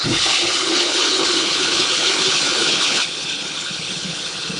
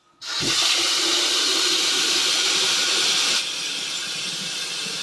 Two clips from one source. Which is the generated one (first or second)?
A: first